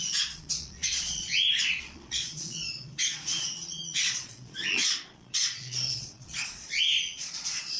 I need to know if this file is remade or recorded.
remade